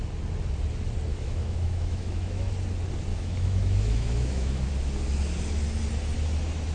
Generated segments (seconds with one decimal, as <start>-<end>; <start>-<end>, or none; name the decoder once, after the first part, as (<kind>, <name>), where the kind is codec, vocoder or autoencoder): 1.1-2.5 (autoencoder, DAC-VAE); 3.1-4.7